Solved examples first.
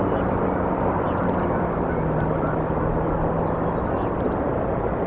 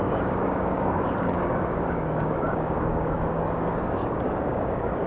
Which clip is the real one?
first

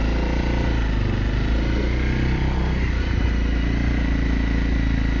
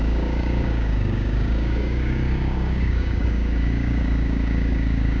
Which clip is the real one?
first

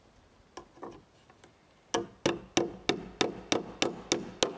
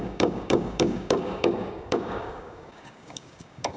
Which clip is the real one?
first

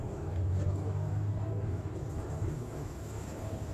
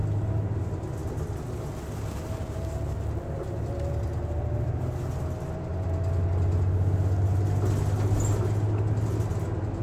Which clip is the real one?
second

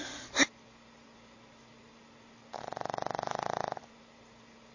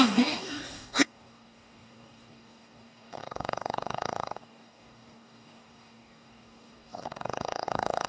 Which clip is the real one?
first